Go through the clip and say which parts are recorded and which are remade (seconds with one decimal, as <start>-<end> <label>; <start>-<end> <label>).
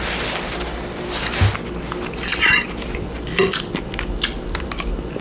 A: 0.0-5.2 recorded